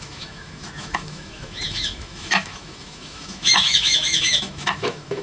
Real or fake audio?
fake